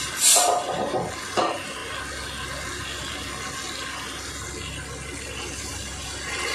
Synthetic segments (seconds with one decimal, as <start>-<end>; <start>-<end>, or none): none